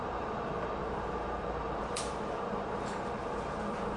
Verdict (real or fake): fake